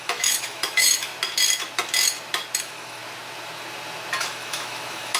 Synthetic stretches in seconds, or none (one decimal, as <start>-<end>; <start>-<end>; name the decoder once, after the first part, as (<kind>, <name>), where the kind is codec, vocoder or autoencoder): 0.0-1.1 (autoencoder, DAC-VAE); 2.6-3.0; 4.2-5.2

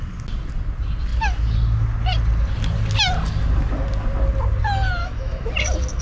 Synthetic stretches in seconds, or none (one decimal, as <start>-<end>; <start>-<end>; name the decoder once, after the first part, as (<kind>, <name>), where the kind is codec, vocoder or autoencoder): 5.0-5.5 (autoencoder, DAC-VAE)